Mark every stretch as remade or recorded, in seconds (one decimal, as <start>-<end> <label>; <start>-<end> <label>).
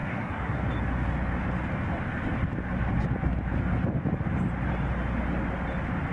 0.0-0.6 remade; 0.6-6.1 recorded